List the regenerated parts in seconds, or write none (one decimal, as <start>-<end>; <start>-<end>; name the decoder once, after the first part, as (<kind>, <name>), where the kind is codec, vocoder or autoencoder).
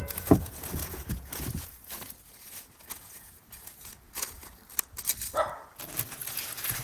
0.0-4.6 (vocoder, Vocos); 6.0-6.8